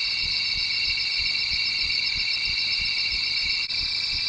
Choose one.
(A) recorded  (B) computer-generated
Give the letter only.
A